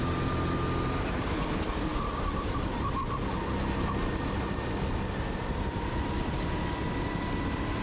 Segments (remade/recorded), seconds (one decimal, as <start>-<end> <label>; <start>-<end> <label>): 0.0-7.8 recorded

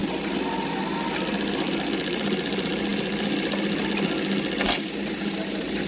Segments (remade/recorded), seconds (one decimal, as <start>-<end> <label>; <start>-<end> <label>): 0.0-5.9 recorded

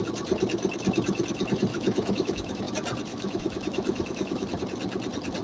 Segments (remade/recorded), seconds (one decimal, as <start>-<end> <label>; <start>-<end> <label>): 0.0-1.7 recorded; 1.7-2.6 remade; 2.6-3.1 recorded; 3.1-4.6 remade; 4.6-5.4 recorded

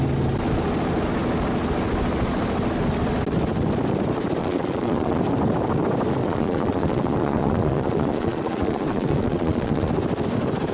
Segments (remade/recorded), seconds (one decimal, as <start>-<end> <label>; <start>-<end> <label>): 0.0-4.4 recorded; 4.4-5.2 remade; 5.2-6.2 recorded; 6.2-9.9 remade; 9.9-10.7 recorded

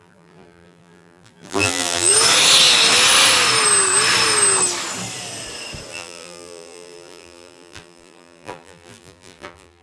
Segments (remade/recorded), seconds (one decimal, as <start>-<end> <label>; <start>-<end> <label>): 0.0-2.1 remade; 2.1-5.9 recorded; 5.9-9.8 remade